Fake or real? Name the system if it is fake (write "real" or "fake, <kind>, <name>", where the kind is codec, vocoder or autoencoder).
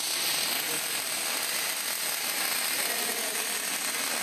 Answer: real